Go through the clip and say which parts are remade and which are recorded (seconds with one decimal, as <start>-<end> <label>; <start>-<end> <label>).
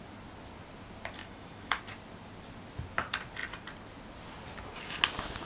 0.0-1.2 recorded; 1.2-1.8 remade; 1.8-5.5 recorded